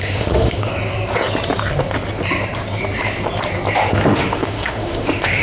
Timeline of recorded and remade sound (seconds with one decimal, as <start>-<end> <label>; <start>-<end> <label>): 0.0-0.7 remade; 0.7-3.9 recorded; 3.9-5.4 remade